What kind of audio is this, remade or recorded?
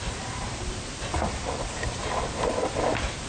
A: remade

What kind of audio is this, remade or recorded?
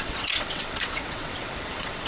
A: remade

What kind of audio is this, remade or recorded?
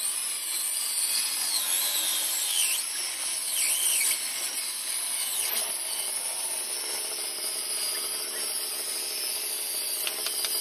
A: recorded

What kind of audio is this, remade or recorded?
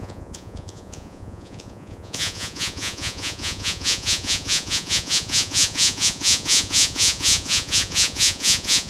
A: remade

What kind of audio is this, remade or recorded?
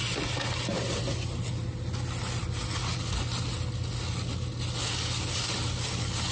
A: recorded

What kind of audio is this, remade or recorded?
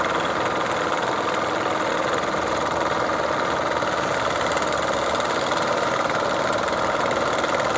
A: recorded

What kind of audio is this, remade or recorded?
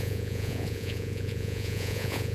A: remade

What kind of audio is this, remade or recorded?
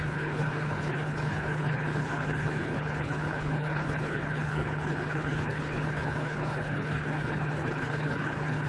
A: remade